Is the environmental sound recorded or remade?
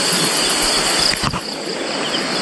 recorded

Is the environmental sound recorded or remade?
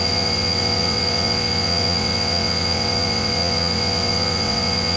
remade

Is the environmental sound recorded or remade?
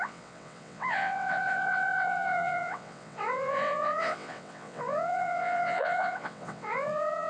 remade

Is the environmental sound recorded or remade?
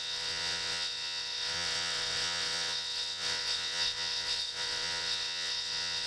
remade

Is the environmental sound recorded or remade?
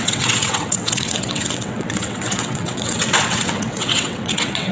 remade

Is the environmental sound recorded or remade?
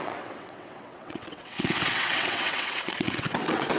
remade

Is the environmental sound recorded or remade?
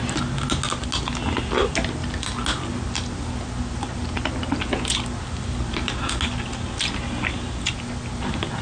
recorded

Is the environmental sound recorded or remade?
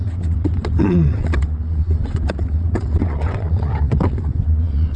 remade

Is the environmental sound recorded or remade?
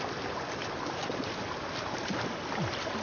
recorded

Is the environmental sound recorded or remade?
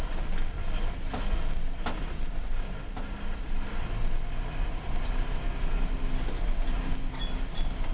recorded